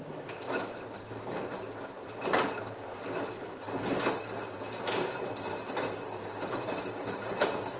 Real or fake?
real